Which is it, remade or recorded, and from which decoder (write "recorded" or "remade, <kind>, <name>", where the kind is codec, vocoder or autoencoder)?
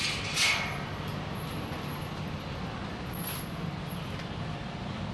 recorded